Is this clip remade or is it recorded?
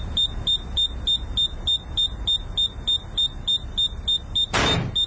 recorded